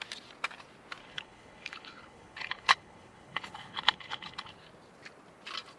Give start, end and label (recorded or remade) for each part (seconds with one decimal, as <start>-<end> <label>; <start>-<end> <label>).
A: 0.0-1.0 recorded; 1.0-4.5 remade; 4.5-5.8 recorded